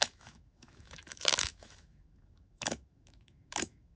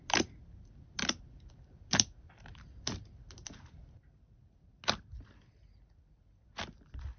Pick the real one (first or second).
second